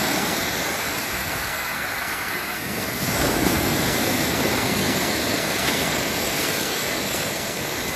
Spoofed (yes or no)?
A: yes